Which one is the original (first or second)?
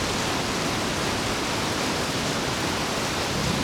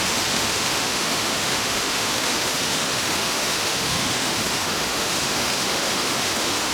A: first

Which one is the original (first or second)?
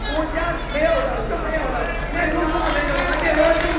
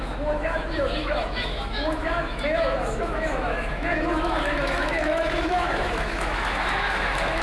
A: first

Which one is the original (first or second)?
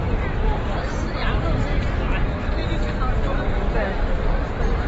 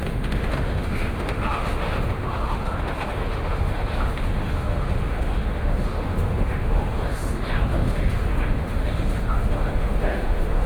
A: first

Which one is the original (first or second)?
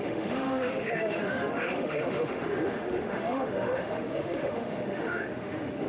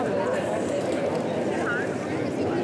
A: second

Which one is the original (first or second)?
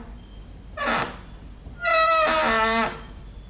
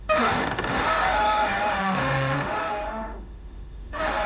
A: first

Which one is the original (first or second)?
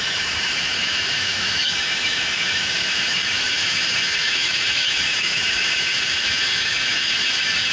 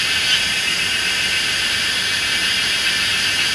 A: second